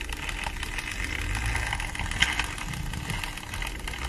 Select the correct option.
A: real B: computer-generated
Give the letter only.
A